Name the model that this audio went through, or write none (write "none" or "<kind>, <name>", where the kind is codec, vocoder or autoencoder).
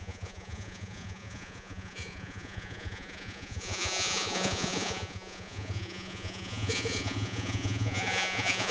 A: vocoder, Vocos